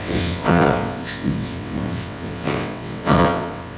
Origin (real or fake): fake